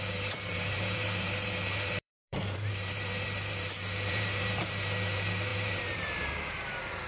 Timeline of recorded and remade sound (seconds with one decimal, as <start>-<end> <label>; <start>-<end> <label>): 0.0-7.1 remade